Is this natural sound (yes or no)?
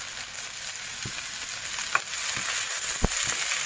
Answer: yes